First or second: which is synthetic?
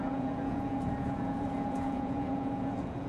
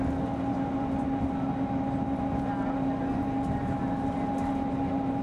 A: first